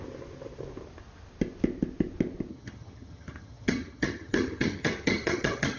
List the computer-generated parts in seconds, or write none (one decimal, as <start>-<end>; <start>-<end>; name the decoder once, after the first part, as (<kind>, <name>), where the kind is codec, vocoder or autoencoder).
2.5-5.8 (vocoder, HiFi-GAN)